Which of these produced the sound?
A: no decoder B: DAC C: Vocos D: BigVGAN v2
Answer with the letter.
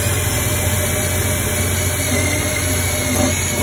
A